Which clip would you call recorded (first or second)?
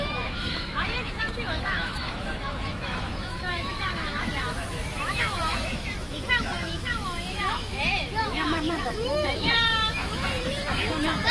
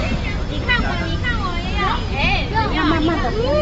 second